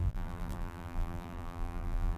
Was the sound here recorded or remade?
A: remade